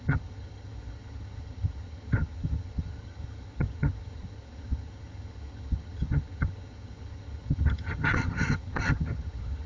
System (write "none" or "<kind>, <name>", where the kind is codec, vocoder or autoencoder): vocoder, HiFi-GAN